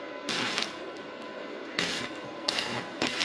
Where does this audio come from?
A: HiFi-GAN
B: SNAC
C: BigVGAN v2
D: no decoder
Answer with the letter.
B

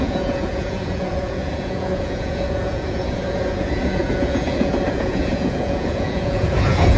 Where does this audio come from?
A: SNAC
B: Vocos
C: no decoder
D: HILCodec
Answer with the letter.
B